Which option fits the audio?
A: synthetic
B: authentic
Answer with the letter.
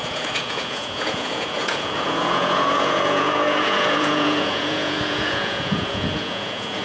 A